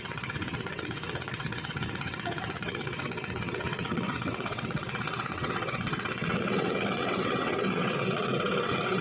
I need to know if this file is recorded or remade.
remade